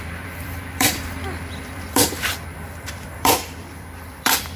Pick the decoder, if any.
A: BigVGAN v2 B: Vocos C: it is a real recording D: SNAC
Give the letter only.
A